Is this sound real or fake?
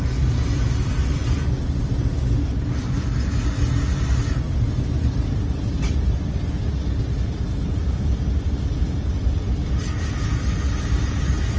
real